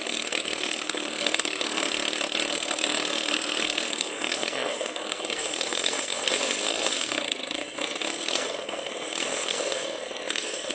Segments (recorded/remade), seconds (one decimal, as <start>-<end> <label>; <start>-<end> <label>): 0.0-1.9 remade; 1.9-2.5 recorded; 2.5-10.7 remade